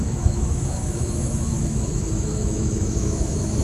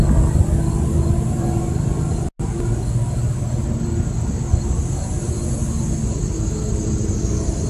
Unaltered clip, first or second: second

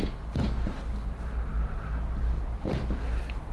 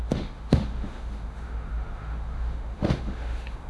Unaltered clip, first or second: first